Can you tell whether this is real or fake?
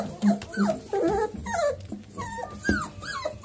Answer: real